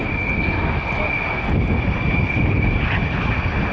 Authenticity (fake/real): real